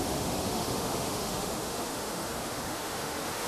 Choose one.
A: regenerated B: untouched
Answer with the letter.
A